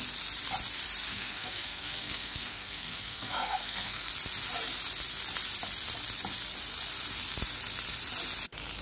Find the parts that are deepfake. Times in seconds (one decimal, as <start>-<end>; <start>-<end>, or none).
1.1-4.1